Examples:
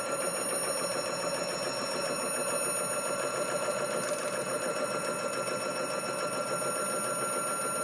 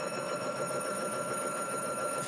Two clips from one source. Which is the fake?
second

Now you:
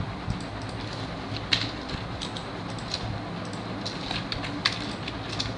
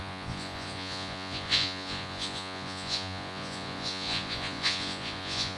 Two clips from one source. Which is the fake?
second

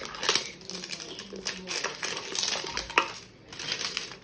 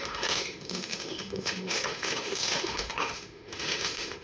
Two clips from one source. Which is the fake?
second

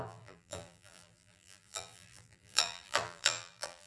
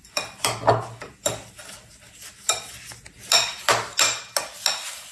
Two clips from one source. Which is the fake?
first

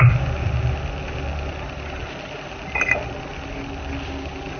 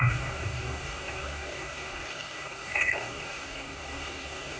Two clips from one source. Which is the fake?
second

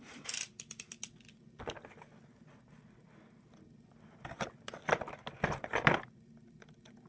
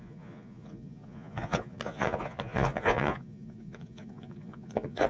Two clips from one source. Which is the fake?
second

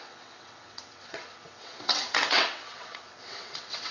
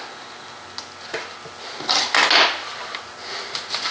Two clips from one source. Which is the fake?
first